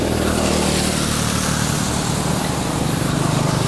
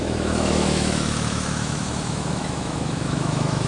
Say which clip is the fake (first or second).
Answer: second